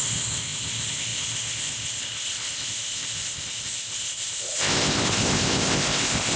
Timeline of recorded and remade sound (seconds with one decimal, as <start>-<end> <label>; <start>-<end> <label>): 0.0-6.4 remade